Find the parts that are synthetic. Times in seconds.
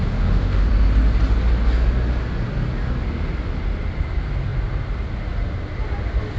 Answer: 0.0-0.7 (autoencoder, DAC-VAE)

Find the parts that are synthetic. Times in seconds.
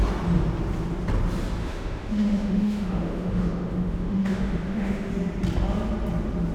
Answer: 1.6-5.1 (autoencoder, DAC-VAE)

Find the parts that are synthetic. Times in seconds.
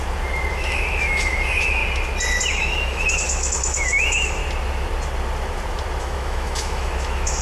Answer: 0.5-1.8 (autoencoder, DAC-VAE); 2.5-4.4; 6.0-7.4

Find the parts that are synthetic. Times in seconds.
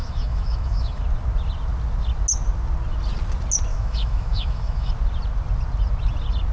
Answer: 0.0-1.0 (autoencoder, DAC-VAE); 3.7-4.9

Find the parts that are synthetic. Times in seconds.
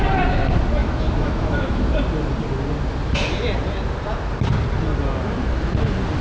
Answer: 0.8-1.9 (autoencoder, DAC-VAE)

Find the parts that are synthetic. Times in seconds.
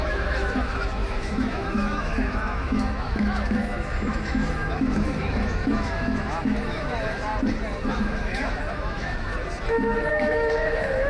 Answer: 0.0-7.3 (autoencoder, DAC-VAE); 7.9-9.3; 10.1-11.1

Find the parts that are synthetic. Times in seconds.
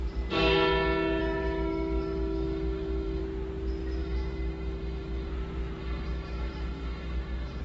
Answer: 1.2-3.2 (autoencoder, DAC-VAE); 4.0-5.3; 5.8-7.6